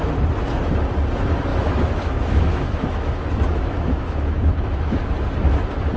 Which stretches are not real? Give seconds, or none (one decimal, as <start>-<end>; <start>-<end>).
1.5-5.1